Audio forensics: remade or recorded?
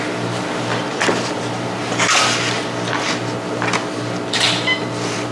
recorded